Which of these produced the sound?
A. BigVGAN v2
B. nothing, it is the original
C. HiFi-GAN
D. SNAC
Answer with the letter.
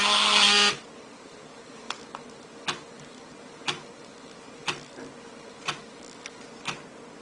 B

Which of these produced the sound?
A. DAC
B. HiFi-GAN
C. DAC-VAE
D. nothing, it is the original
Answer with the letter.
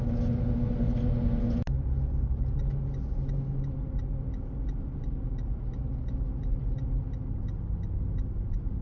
D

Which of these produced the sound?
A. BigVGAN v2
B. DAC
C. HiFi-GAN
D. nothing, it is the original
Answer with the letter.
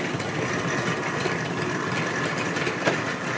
D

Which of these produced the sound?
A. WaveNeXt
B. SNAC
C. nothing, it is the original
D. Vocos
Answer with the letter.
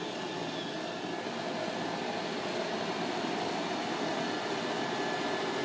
C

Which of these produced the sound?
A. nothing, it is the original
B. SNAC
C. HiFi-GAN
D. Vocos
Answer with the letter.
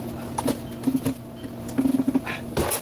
A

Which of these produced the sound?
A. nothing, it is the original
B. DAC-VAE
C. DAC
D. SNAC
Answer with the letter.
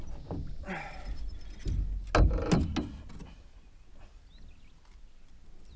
A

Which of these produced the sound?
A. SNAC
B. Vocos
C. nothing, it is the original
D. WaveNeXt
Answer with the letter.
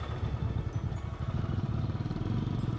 C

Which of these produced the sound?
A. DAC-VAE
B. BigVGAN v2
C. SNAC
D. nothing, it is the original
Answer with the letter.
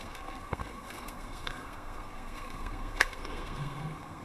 C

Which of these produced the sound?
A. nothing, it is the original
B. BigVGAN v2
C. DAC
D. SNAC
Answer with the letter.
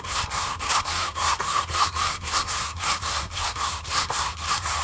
D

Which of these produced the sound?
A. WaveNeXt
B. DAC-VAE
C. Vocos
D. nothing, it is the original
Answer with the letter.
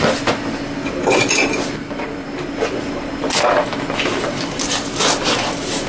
D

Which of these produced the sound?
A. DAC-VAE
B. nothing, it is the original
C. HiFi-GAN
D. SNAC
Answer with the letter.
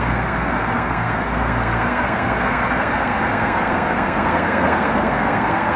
D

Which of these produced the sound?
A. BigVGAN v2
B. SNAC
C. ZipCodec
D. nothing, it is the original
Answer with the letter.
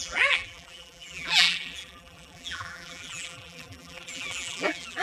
A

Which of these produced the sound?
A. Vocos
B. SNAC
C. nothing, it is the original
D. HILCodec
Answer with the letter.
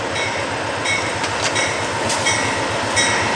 C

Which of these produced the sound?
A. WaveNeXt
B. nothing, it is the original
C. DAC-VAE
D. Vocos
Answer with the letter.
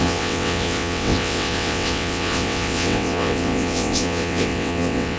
A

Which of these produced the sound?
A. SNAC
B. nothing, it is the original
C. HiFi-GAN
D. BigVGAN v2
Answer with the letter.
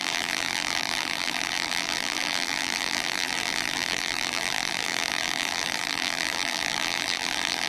D